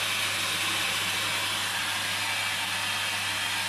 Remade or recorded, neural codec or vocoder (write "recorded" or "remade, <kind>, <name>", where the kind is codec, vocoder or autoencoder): recorded